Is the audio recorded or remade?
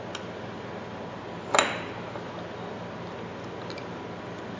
recorded